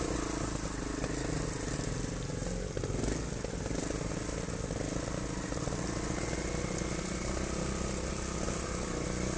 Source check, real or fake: real